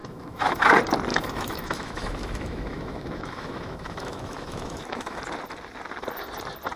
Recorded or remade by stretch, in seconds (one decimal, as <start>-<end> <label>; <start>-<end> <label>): 0.0-0.6 remade; 0.6-1.1 recorded; 1.1-5.2 remade; 5.2-6.8 recorded